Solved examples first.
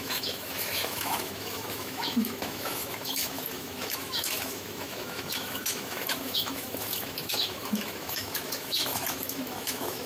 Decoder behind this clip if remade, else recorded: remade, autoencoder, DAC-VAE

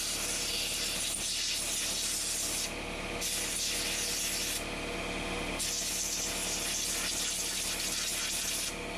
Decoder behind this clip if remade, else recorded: recorded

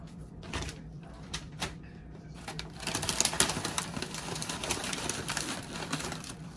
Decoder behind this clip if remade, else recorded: remade, vocoder, BigVGAN v2